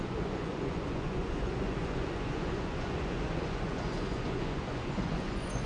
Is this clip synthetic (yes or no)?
yes